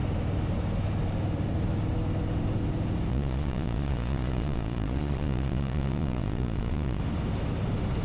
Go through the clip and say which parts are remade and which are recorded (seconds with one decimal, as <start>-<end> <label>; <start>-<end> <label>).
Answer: 0.0-3.1 recorded; 3.1-7.0 remade; 7.0-8.0 recorded